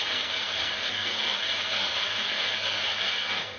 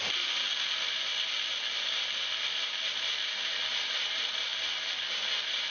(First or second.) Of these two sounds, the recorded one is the second